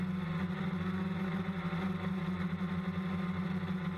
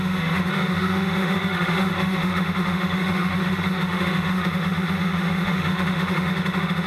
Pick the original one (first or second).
first